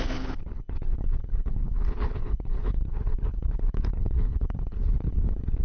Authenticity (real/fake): fake